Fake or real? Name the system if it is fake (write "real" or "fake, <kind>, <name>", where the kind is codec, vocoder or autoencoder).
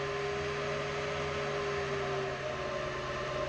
real